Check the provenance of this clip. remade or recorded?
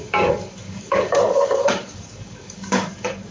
remade